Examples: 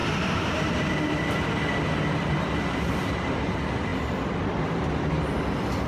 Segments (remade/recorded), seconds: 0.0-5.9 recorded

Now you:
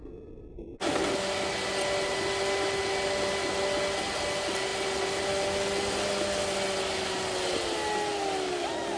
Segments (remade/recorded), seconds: 0.0-9.0 recorded

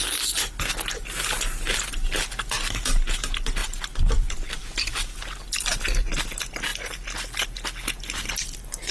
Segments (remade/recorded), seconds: 0.0-8.9 recorded

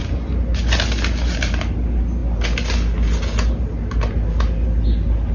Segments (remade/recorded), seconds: 0.0-5.3 recorded

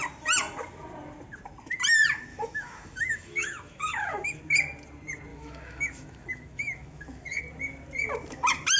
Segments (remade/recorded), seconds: 0.0-2.3 recorded; 2.3-4.4 remade; 4.4-5.3 recorded; 5.3-7.4 remade; 7.4-8.8 recorded

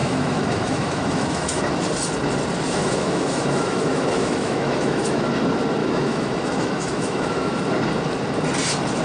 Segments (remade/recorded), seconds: 0.0-1.6 remade; 1.6-2.8 recorded; 2.8-5.2 remade; 5.2-5.8 recorded; 5.8-7.6 remade; 7.6-9.0 recorded

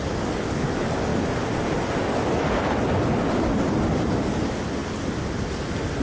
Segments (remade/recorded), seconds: 0.0-6.0 recorded

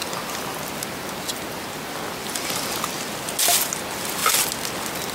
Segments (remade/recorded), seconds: 0.0-5.1 recorded